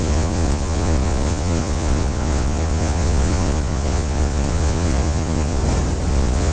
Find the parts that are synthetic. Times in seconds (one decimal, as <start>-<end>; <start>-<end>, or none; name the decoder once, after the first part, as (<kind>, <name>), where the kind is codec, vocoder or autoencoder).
0.0-5.6 (vocoder, Vocos); 6.1-6.5